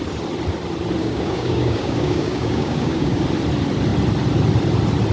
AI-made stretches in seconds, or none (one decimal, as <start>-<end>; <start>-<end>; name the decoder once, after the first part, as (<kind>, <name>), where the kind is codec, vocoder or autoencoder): 1.0-3.2 (codec, DAC)